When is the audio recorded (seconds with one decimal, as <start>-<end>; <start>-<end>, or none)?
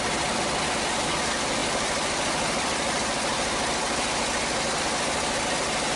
0.0-6.0